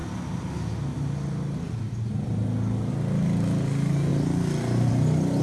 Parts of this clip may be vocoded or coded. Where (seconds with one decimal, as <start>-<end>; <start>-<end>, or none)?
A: none